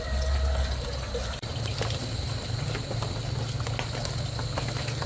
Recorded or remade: recorded